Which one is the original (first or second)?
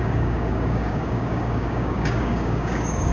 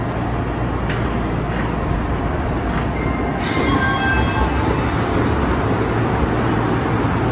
second